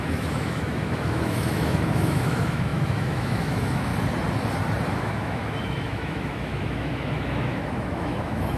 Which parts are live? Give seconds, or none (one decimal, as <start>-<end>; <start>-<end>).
3.9-4.9